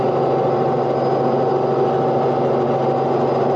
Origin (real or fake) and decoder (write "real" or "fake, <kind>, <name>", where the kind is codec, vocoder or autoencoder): real